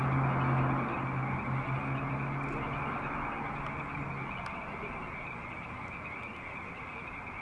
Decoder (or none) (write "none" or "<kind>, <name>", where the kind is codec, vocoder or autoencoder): none